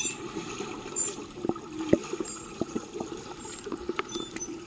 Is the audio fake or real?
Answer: fake